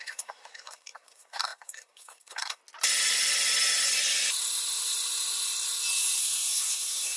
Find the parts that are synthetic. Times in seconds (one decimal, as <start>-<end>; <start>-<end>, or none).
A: 0.0-2.6; 6.2-7.2